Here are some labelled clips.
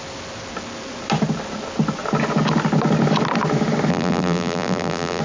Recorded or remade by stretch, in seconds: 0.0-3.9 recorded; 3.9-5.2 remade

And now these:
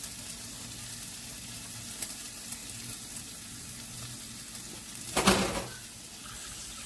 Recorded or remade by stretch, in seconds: 0.0-6.9 recorded